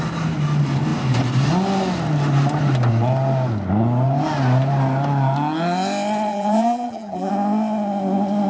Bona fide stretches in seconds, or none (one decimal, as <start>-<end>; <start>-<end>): 0.0-6.3; 7.3-8.5